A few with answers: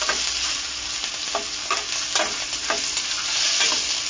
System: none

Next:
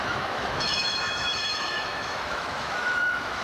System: autoencoder, DAC-VAE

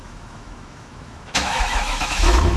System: autoencoder, DAC-VAE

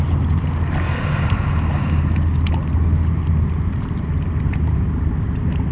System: none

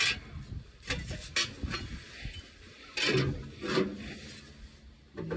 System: none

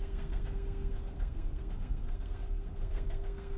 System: codec, SNAC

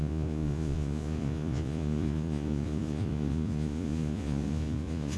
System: vocoder, Vocos